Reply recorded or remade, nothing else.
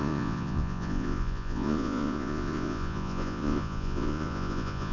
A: remade